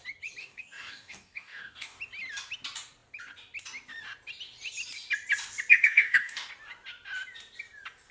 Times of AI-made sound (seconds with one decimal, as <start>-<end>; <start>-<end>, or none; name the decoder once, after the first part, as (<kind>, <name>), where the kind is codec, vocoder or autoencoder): 0.4-2.0 (codec, DAC); 5.7-6.5